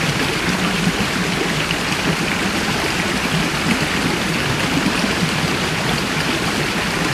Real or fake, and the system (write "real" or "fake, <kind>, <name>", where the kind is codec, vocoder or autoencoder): real